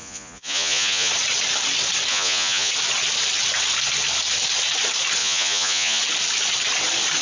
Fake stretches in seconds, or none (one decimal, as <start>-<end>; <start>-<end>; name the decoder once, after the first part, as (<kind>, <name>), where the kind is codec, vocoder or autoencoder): 0.0-1.1 (vocoder, Vocos); 2.1-2.7; 5.2-6.0